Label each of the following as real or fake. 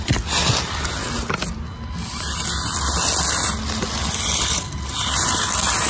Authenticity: real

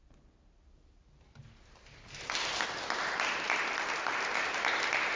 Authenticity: real